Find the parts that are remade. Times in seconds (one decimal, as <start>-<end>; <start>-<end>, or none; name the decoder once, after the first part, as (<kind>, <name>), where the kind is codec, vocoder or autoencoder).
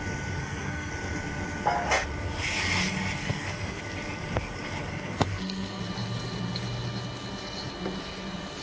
0.4-0.9 (codec, SNAC); 3.2-3.8; 4.9-5.8